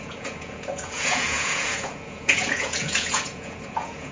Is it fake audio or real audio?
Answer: fake